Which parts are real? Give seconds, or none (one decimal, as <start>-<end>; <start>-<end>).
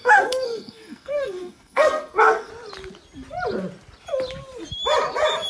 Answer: 2.5-5.5